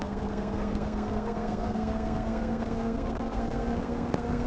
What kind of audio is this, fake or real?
fake